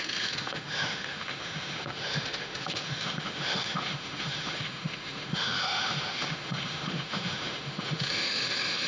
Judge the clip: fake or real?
fake